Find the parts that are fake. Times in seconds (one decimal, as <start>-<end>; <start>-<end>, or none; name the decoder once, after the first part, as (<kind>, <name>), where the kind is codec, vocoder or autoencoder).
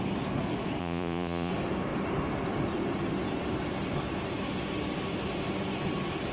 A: 0.8-1.5 (vocoder, Vocos)